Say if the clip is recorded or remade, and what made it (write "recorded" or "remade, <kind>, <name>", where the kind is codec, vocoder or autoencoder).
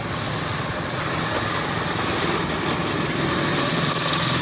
recorded